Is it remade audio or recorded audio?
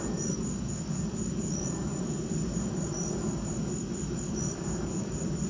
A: remade